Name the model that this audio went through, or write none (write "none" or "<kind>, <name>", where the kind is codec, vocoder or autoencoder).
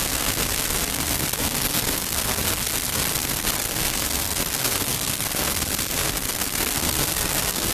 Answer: codec, SNAC